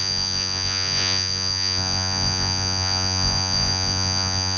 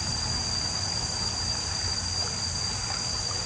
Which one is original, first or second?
second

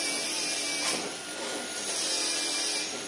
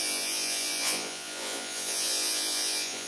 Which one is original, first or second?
first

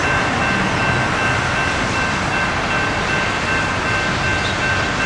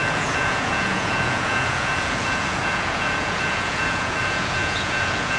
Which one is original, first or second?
first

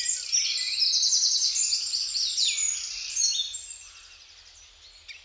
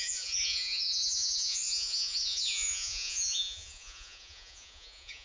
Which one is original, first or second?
first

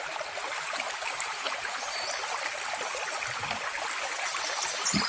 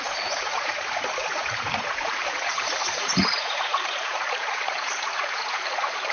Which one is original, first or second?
first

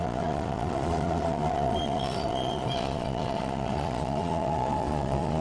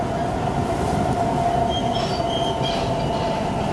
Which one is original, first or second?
second